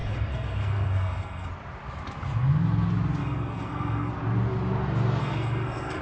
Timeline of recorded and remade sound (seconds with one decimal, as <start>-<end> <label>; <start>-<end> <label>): 0.0-1.5 remade; 1.5-3.2 recorded; 3.2-4.1 remade; 4.1-5.2 recorded; 5.2-6.0 remade